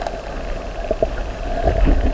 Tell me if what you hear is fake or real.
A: real